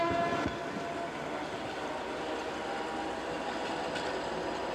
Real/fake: real